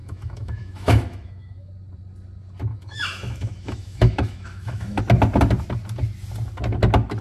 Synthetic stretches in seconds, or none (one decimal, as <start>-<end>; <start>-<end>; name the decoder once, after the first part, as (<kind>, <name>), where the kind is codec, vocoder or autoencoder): 0.0-1.7 (autoencoder, DAC-VAE); 2.7-5.0